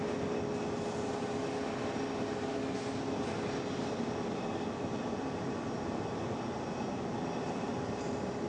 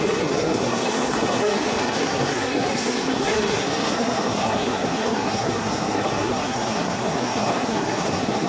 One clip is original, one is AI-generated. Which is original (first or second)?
first